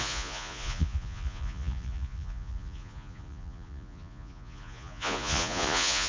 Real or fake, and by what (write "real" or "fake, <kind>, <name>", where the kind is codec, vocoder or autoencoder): fake, vocoder, Vocos